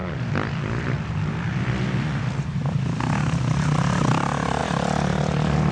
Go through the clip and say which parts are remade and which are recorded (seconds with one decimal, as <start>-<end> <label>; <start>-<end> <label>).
0.0-5.7 recorded